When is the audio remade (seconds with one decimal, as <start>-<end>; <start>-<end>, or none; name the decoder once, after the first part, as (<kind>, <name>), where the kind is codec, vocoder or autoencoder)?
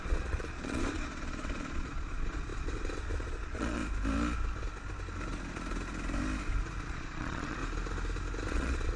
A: 0.0-3.8 (vocoder, Vocos); 6.9-7.6; 8.5-9.0